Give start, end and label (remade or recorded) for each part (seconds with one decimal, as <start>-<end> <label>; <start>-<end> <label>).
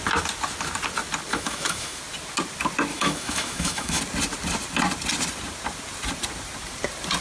0.0-1.3 recorded; 1.3-2.0 remade; 2.0-2.9 recorded; 2.9-4.0 remade; 4.0-7.2 recorded